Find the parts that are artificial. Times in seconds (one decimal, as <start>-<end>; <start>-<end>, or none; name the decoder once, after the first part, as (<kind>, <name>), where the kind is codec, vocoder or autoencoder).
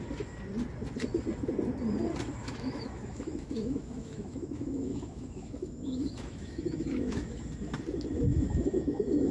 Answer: 2.4-7.4 (autoencoder, DAC-VAE); 8.3-9.3